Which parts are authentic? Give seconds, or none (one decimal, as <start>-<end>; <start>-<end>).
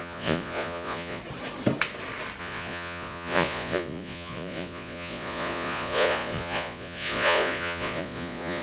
1.2-2.4